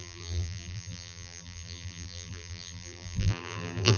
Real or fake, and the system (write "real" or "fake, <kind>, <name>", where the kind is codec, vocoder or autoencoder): fake, vocoder, BigVGAN v2